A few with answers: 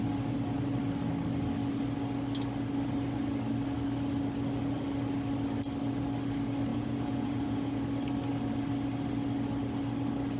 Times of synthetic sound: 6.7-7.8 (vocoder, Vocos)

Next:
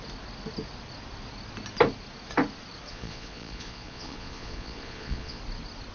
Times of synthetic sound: 2.9-5.4 (vocoder, Vocos)

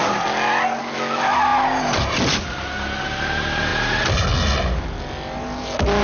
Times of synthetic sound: none

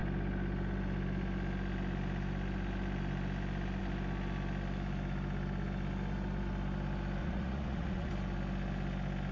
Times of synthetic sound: 7.2-8.1 (vocoder, Vocos)

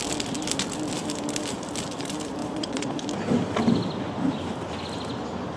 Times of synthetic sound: 2.4-3.0 (vocoder, Vocos)

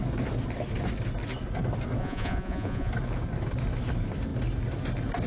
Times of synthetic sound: 2.0-2.9 (vocoder, Vocos)

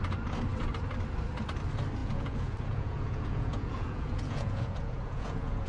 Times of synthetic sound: 2.0-5.7 (vocoder, Vocos)